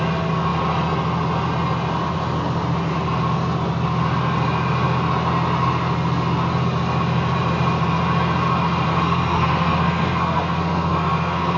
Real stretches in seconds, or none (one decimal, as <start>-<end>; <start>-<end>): 0.0-8.9